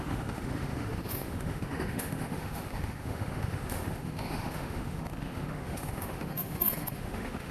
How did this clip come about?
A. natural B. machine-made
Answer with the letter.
B